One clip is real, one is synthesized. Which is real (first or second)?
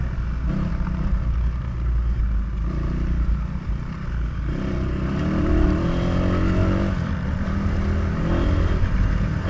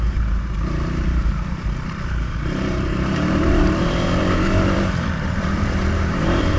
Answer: first